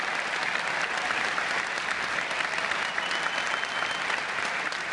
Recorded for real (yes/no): yes